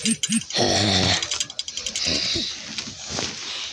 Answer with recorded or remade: recorded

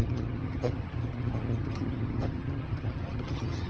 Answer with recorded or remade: remade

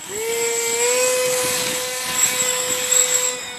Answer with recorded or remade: remade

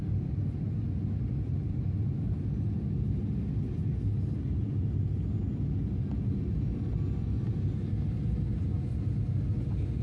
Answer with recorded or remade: recorded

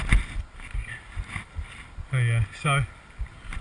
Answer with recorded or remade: recorded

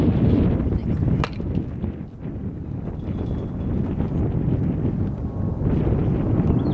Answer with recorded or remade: recorded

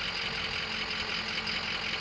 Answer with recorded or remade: recorded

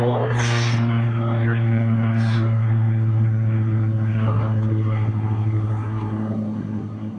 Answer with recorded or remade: remade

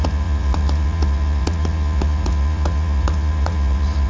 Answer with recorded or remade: remade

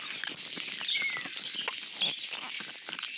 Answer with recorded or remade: recorded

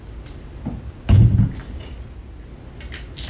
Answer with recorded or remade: recorded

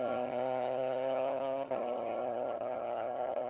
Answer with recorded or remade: remade